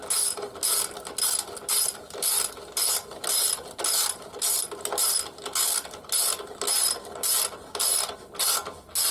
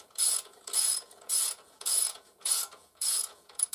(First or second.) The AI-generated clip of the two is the second